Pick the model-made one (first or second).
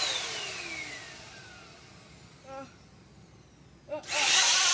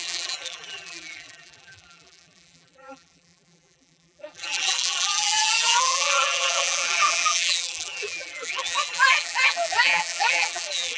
second